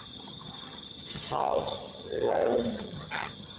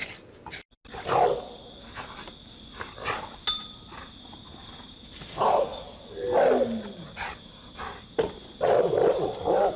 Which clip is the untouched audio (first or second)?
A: second